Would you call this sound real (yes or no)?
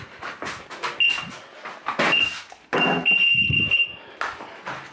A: yes